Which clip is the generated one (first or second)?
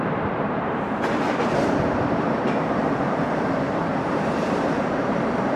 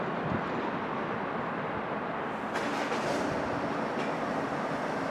first